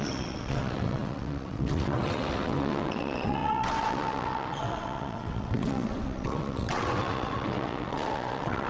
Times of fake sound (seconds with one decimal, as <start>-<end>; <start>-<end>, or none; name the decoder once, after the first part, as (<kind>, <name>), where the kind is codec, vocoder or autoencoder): 0.0-8.7 (vocoder, WaveNeXt)